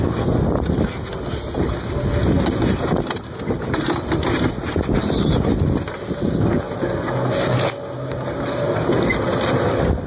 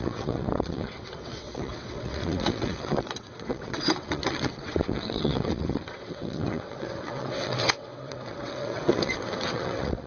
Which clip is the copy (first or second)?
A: second